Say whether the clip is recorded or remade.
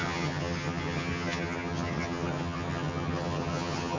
remade